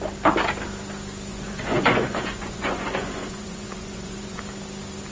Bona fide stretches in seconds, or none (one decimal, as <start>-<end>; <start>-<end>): 0.0-1.3; 4.4-5.1

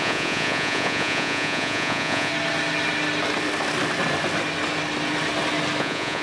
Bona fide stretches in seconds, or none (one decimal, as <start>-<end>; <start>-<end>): 2.3-5.8

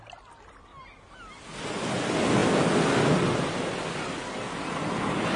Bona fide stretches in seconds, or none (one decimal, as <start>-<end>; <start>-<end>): 0.0-5.4

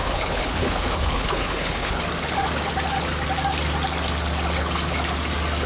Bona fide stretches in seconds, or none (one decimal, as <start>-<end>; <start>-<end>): 2.0-5.7

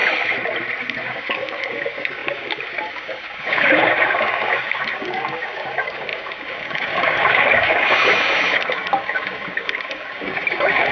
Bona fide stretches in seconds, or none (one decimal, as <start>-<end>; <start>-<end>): 0.0-0.8

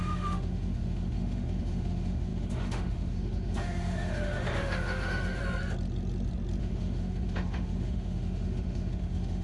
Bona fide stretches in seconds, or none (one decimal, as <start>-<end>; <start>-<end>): 5.4-6.6

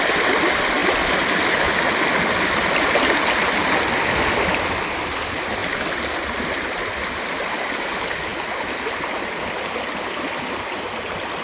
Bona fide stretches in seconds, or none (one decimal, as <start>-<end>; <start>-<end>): 0.0-11.4